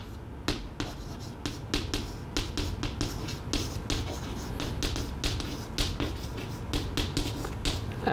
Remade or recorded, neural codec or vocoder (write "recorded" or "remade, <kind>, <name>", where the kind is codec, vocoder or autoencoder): recorded